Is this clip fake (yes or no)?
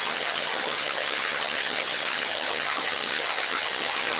yes